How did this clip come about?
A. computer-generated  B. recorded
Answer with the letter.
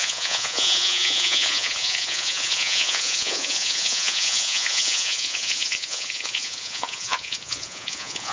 A